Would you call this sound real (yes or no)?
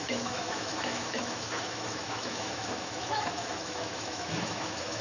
no